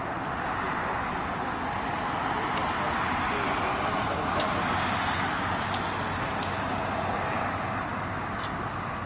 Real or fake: real